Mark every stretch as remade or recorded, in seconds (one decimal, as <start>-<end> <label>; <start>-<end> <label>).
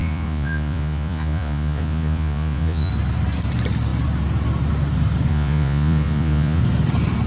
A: 0.0-2.9 remade; 2.9-5.3 recorded; 5.3-6.6 remade; 6.6-7.3 recorded